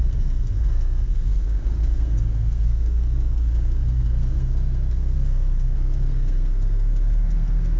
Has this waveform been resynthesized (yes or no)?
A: yes